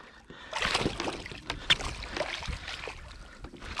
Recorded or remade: recorded